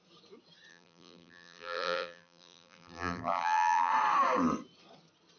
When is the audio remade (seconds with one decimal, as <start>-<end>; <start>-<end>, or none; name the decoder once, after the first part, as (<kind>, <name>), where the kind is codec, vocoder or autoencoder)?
0.7-3.9 (vocoder, BigVGAN v2)